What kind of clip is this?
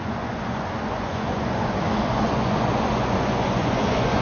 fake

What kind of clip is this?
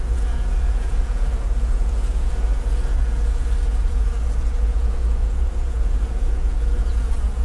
fake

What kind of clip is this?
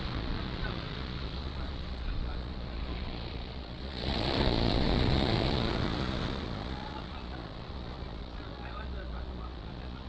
fake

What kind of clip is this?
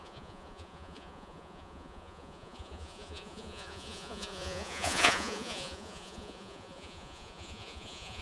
fake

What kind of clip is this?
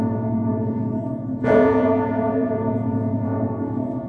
fake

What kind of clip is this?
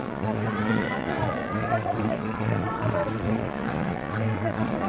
fake